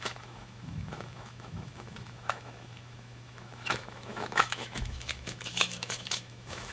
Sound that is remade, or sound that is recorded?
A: remade